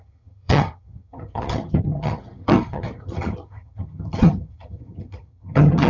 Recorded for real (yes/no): no